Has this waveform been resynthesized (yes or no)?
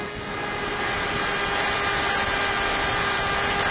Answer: no